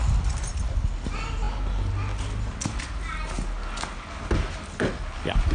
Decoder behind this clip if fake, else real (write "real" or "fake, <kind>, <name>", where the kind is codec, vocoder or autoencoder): real